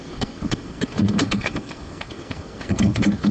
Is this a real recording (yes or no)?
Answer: no